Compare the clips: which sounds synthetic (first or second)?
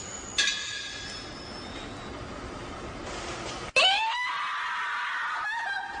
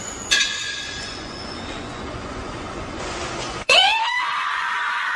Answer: second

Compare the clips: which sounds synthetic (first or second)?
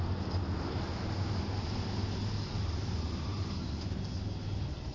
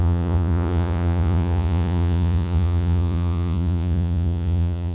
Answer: second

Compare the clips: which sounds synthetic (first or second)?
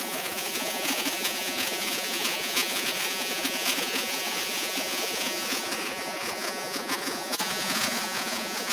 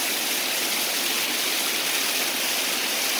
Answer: first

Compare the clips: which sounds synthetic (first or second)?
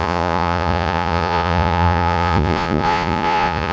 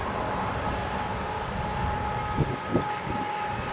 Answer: first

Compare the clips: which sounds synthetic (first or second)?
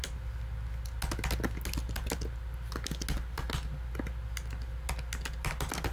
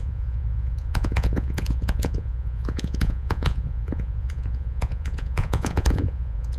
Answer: second